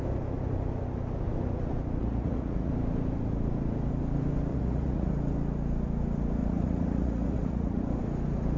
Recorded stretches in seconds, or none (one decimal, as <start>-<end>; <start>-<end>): 0.0-2.0; 2.7-4.5; 5.1-6.4; 7.8-8.6